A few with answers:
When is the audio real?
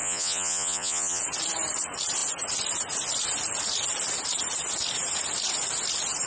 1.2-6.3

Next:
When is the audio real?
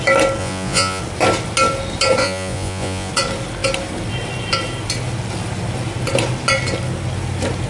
0.0-0.4; 1.0-2.2; 3.1-7.7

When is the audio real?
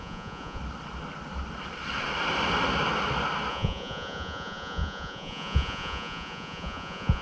0.6-3.5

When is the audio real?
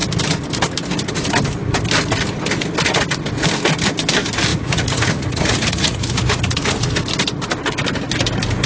0.0-4.5; 6.9-8.7